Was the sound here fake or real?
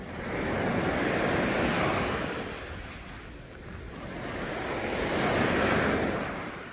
real